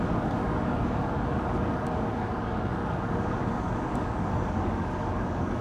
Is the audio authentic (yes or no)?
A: no